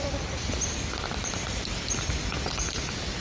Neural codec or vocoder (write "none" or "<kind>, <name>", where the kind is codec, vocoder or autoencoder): none